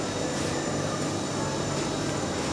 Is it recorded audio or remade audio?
remade